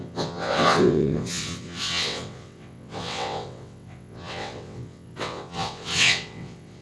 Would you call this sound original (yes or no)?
no